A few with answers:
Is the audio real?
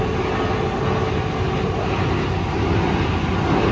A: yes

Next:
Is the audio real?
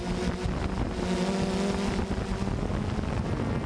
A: yes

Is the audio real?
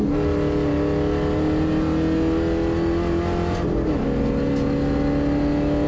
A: yes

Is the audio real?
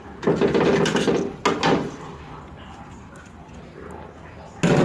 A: yes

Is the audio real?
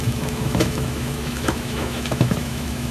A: no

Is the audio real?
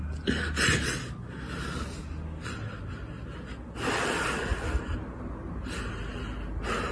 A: yes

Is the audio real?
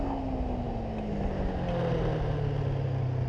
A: yes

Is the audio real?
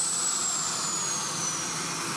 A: yes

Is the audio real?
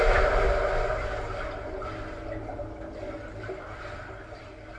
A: yes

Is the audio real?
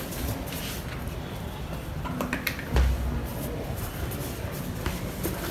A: yes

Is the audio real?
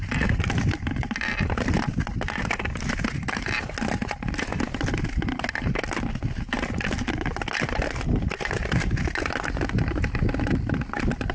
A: yes